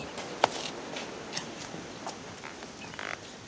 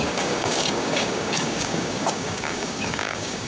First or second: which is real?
first